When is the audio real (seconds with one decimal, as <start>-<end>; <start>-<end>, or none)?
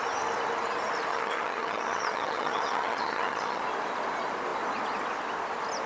0.0-1.1; 3.6-5.9